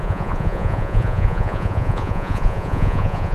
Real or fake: fake